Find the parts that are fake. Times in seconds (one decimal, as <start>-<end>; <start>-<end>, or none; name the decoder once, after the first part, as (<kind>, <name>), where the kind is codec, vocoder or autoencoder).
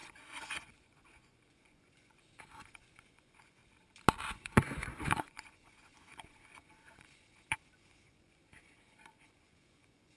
0.0-3.6 (vocoder, Vocos); 4.3-10.2